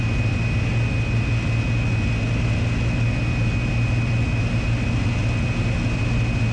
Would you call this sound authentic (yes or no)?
yes